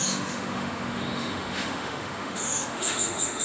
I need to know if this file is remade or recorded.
remade